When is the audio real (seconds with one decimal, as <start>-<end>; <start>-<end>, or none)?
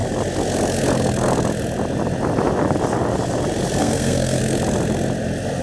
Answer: 0.0-3.8; 4.4-5.6